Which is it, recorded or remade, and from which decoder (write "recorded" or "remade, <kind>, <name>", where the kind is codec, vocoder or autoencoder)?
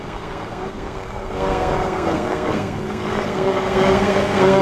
remade, codec, SNAC